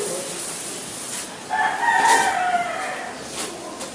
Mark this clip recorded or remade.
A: recorded